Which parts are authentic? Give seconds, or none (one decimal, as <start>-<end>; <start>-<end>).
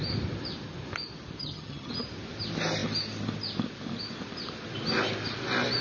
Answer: 0.0-1.4; 1.9-5.8